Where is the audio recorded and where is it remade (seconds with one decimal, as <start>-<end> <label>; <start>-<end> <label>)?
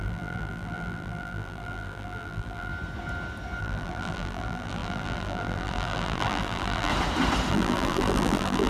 0.0-2.7 remade; 2.7-3.6 recorded; 3.6-6.9 remade; 6.9-7.5 recorded; 7.5-8.7 remade